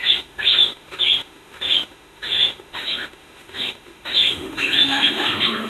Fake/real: fake